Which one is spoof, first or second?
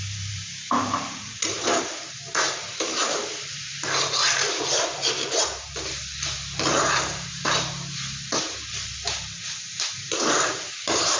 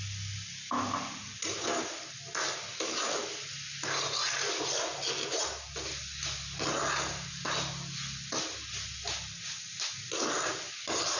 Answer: first